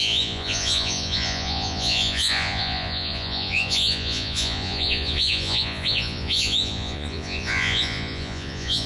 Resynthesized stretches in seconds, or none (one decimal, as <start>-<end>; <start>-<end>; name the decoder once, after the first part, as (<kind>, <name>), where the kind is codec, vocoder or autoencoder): 0.0-8.9 (vocoder, Vocos)